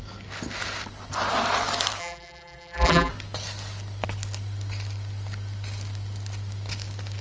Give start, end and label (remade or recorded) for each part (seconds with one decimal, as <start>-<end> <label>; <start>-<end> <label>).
0.0-2.0 recorded; 2.0-3.1 remade; 3.1-7.2 recorded